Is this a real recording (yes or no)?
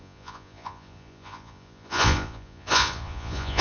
no